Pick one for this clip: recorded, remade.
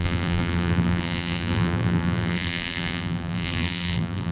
remade